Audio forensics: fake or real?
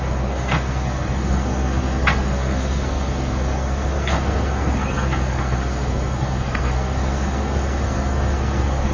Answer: fake